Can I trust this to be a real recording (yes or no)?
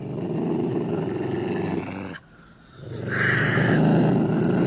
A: yes